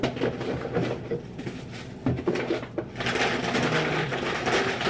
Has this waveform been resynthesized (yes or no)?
no